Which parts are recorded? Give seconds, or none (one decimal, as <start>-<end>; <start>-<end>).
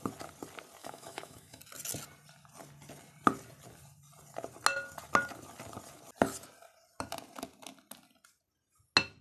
0.0-0.8; 1.6-9.2